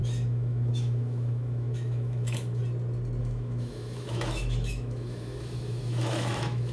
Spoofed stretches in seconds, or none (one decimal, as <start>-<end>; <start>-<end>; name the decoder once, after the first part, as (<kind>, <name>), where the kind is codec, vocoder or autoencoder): 0.0-2.6 (autoencoder, DAC-VAE); 3.2-6.7